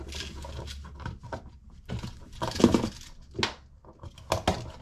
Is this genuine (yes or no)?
yes